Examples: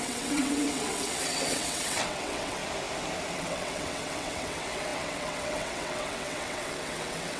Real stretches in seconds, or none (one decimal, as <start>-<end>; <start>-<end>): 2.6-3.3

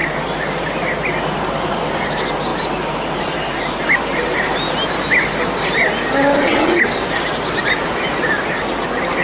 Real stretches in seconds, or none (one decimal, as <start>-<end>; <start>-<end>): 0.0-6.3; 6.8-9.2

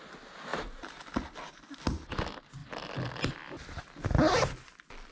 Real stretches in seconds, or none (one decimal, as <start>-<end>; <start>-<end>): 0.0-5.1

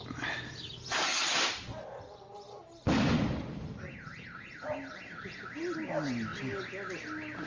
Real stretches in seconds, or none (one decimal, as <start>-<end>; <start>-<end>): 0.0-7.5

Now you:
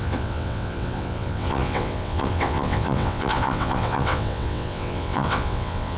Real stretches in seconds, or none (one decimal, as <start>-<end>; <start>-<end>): none

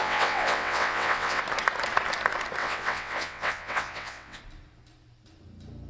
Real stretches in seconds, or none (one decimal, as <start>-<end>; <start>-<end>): 1.4-2.6; 4.4-5.9